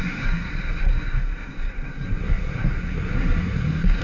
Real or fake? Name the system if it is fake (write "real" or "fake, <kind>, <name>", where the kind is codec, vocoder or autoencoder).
fake, codec, SNAC